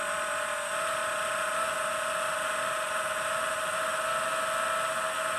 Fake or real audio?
real